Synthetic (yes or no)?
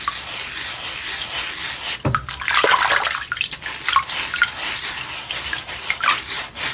no